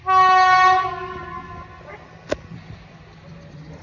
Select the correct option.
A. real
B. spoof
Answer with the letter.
A